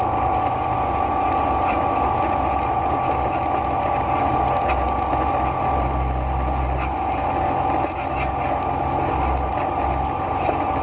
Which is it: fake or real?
real